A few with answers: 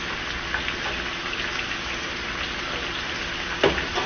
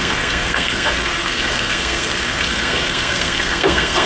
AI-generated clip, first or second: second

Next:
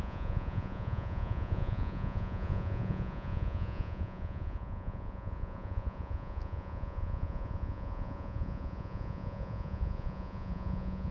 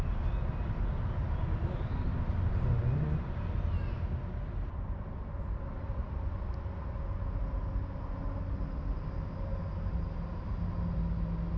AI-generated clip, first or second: first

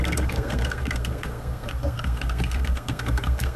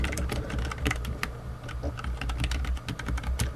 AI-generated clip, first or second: first